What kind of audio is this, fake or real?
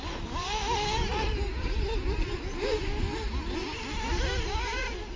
real